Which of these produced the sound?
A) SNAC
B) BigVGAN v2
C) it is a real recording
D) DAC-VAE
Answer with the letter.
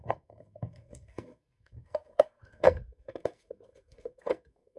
A